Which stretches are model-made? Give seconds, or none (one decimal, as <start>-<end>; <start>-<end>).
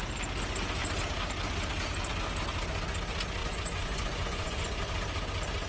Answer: 3.4-4.8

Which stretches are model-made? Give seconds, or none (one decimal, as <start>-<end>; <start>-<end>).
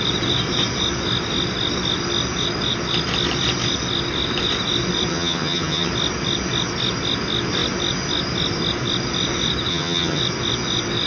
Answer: 5.1-5.9; 9.7-10.2